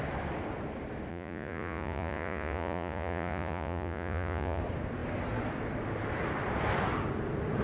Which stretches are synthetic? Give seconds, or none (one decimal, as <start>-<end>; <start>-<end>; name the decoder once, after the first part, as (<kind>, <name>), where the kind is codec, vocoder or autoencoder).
1.1-4.6 (vocoder, Vocos)

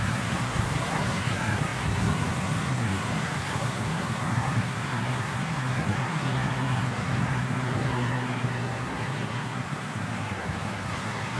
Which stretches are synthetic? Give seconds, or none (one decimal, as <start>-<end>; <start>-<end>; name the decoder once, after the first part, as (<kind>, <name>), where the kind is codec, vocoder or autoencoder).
0.0-11.4 (codec, SNAC)

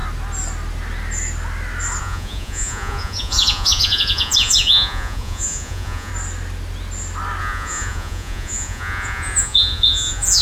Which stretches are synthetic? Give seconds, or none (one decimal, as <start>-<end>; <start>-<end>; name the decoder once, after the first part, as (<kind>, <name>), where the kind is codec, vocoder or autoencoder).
2.0-6.1 (vocoder, Vocos); 7.4-10.4